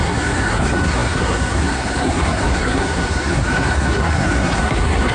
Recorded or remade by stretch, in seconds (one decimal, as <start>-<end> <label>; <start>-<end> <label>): 0.0-5.1 remade